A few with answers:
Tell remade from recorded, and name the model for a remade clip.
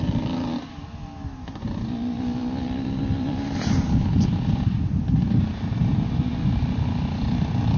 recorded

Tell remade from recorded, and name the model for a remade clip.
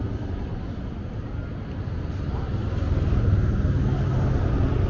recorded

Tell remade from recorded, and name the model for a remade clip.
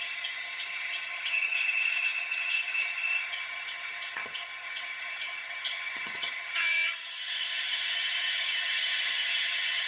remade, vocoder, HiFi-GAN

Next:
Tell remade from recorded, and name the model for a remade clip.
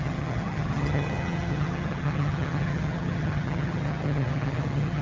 remade, vocoder, HiFi-GAN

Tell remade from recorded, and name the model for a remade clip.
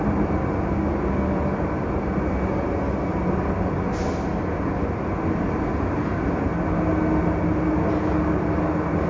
recorded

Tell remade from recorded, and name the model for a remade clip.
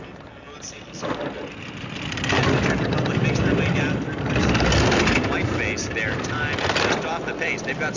recorded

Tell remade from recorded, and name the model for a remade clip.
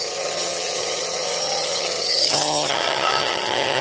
remade, vocoder, HiFi-GAN